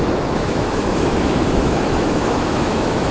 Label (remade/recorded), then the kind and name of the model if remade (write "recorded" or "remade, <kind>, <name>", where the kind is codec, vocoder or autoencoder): remade, autoencoder, DAC-VAE